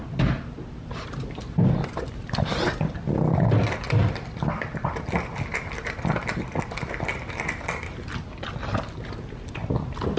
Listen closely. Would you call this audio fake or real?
real